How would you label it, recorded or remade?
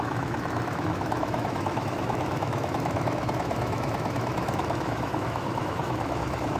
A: remade